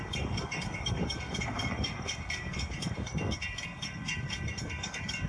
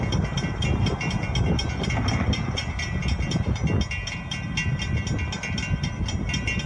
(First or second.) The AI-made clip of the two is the first